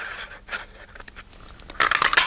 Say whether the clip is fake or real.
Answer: real